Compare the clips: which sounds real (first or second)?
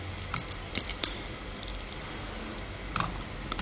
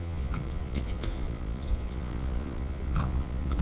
first